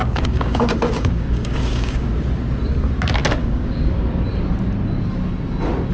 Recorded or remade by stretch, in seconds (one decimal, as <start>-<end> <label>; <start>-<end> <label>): 0.0-2.1 remade; 2.1-3.4 recorded; 3.4-4.1 remade; 4.1-5.9 recorded